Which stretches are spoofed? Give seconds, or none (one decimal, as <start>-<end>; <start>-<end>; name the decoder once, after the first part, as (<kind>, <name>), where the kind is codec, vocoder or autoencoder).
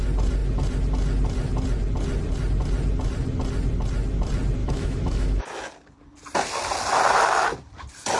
4.6-5.4 (autoencoder, DAC-VAE)